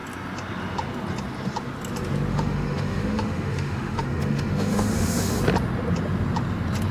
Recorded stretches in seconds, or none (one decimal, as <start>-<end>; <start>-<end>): 0.0-2.3; 5.4-6.9